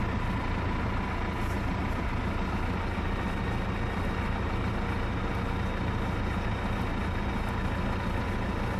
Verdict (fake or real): real